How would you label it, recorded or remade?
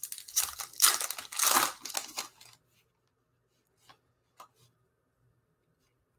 recorded